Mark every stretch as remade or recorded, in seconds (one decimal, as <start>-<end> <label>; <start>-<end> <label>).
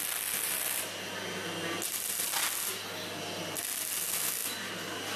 0.0-5.2 recorded